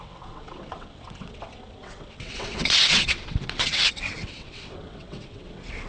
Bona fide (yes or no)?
no